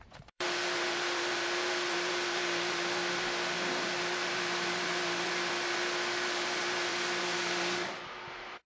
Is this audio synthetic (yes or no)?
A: yes